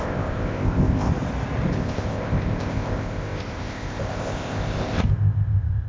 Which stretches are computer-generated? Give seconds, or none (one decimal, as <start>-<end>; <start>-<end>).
0.0-1.1; 1.7-5.9